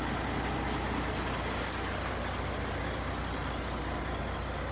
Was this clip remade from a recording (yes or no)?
no